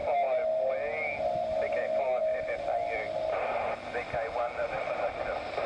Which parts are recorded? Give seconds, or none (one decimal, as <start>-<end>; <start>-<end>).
0.0-4.6; 5.1-5.7